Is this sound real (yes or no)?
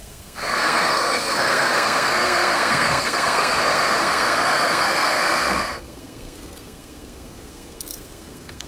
no